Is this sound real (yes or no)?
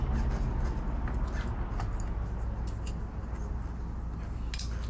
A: yes